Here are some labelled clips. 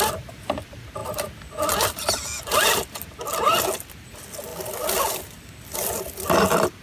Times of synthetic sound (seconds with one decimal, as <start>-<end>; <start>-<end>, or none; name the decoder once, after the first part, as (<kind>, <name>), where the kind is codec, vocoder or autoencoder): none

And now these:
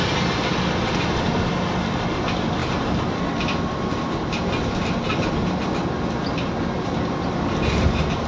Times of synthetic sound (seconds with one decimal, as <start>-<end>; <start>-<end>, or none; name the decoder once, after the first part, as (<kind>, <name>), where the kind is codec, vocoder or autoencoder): none

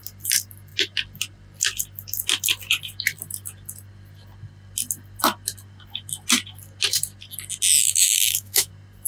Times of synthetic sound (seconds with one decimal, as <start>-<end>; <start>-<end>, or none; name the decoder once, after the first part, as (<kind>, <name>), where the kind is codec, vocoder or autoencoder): 7.8-8.7 (autoencoder, DAC-VAE)

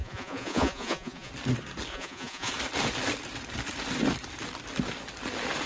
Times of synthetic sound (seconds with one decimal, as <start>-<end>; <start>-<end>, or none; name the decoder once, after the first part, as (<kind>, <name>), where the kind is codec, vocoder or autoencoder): 0.0-1.3 (vocoder, Vocos); 1.9-2.5

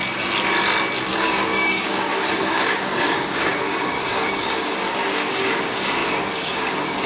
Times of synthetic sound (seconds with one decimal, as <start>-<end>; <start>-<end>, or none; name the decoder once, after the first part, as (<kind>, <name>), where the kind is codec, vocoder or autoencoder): 1.1-7.1 (codec, DAC)